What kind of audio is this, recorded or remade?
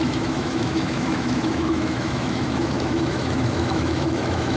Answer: remade